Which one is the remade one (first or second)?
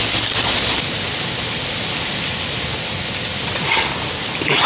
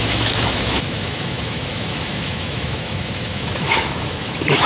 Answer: second